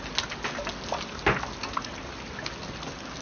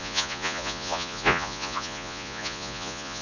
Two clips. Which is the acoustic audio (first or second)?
first